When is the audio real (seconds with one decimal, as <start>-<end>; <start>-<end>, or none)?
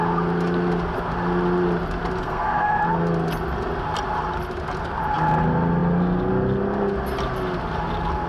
0.0-2.2; 2.8-8.3